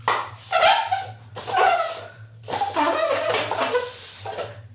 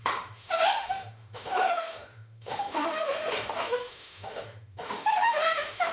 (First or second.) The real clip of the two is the first